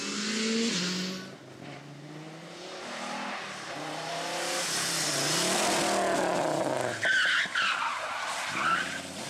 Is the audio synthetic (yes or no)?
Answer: no